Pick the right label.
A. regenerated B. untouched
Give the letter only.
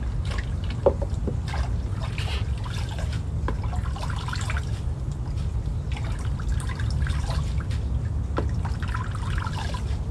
B